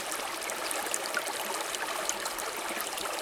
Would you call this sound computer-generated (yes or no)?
no